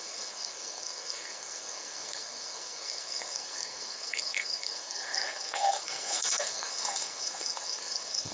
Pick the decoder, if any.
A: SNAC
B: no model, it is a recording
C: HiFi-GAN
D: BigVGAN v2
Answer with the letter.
A